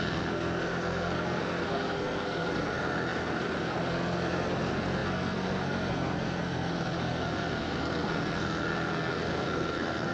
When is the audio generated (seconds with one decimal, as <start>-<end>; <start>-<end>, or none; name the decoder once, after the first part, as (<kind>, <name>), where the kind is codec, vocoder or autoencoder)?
0.0-10.1 (codec, SNAC)